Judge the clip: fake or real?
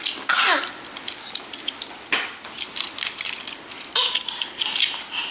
real